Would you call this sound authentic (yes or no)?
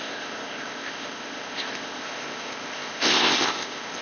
no